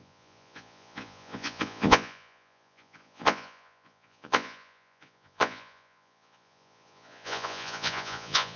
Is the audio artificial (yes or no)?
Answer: yes